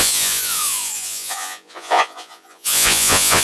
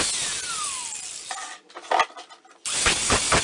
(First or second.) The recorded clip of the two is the second